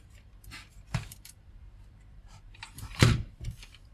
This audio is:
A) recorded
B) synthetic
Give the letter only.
B